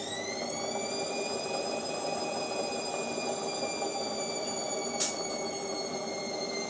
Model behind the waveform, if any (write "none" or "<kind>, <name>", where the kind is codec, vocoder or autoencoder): none